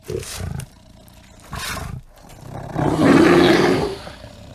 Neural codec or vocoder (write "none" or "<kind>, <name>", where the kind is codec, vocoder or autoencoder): none